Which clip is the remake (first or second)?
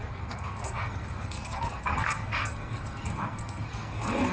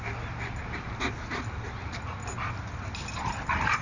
first